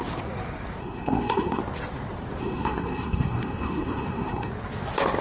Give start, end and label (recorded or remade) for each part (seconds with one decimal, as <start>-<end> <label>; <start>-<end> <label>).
0.0-0.8 recorded; 0.8-1.6 remade; 1.6-2.4 recorded; 2.4-4.5 remade; 4.5-5.2 recorded